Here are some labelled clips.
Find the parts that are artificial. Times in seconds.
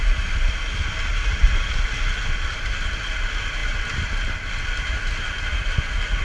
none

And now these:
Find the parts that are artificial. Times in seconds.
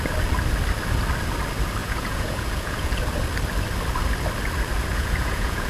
1.8-2.9 (vocoder, Vocos); 4.9-5.7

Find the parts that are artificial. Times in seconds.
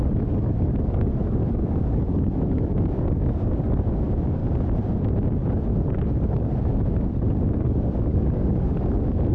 0.0-4.4 (codec, DAC); 5.9-9.3